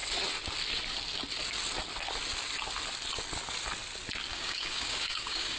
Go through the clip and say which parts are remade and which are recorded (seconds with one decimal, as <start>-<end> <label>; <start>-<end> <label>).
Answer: 0.0-4.3 recorded; 4.3-5.6 remade